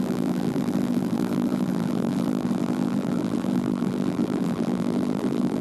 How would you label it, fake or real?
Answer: fake